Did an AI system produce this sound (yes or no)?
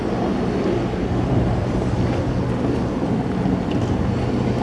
no